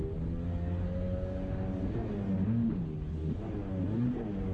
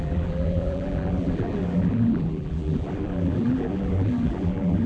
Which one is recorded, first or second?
first